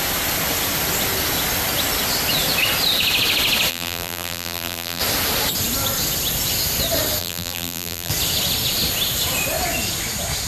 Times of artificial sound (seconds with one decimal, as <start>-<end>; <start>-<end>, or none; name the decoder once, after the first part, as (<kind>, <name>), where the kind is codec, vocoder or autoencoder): 3.7-5.0 (vocoder, BigVGAN v2); 7.2-8.1